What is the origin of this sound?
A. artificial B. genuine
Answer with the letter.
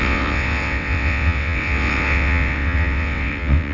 A